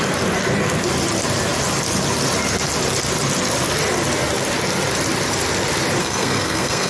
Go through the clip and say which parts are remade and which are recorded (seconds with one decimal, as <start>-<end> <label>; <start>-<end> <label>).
0.0-6.0 recorded; 6.0-6.9 remade

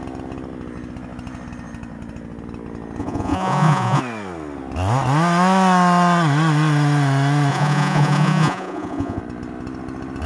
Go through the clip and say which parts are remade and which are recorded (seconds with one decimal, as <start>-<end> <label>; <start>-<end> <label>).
0.0-3.0 recorded; 3.0-4.0 remade; 4.0-7.5 recorded; 7.5-9.2 remade; 9.2-10.3 recorded

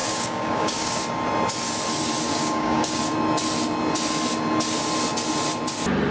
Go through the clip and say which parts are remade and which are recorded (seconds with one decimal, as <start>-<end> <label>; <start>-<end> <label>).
0.0-1.0 remade; 1.0-2.3 recorded; 2.3-3.0 remade; 3.0-6.1 recorded

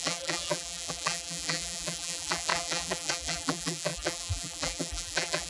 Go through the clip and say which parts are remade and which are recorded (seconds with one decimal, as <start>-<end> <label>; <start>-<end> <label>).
0.0-5.5 remade

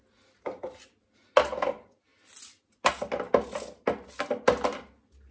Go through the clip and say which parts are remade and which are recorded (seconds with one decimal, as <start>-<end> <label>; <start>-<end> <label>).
0.0-5.3 recorded